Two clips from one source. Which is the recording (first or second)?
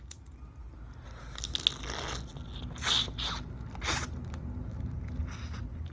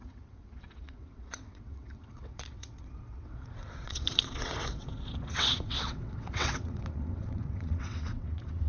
first